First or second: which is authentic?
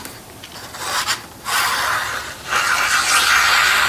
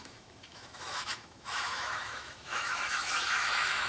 first